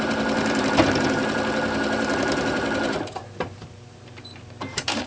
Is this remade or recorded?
remade